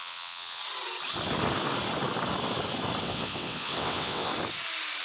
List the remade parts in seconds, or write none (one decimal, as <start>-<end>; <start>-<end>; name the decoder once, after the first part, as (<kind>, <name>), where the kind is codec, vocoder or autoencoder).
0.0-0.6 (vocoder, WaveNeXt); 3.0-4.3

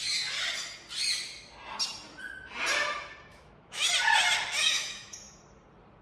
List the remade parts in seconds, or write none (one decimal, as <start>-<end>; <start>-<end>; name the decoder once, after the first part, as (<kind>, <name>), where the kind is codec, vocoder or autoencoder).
3.3-3.9 (autoencoder, DAC-VAE); 4.6-5.4

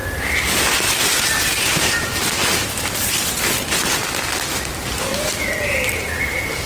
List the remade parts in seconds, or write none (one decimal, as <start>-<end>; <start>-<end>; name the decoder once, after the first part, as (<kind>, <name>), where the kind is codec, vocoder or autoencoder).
none